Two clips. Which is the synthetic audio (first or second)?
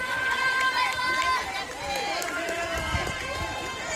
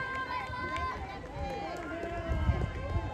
first